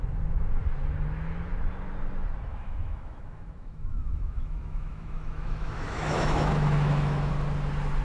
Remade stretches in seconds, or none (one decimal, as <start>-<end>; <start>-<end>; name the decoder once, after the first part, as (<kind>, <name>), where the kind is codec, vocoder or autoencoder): 2.5-7.3 (autoencoder, DAC-VAE)